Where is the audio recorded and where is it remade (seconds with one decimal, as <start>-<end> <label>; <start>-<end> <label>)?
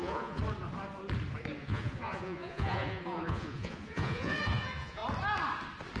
0.0-0.4 remade; 0.4-1.6 recorded; 1.6-5.0 remade; 5.0-6.0 recorded